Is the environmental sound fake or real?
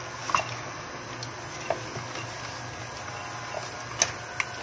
real